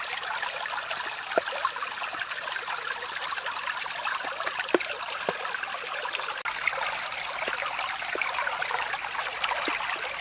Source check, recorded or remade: recorded